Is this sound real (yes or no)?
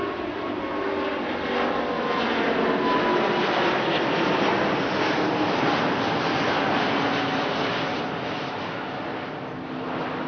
yes